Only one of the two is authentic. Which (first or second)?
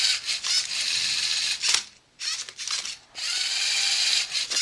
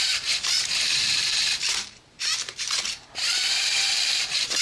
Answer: first